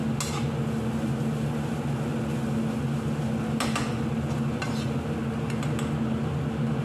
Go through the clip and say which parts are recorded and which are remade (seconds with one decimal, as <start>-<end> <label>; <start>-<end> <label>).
0.0-6.8 recorded